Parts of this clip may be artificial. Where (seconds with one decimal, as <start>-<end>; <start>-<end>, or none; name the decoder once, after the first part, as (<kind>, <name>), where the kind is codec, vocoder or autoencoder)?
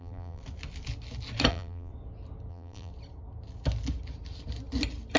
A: 0.0-0.4 (vocoder, BigVGAN v2); 1.5-1.9; 2.5-2.9